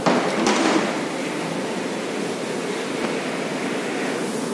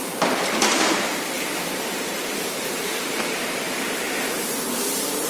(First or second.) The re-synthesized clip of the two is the second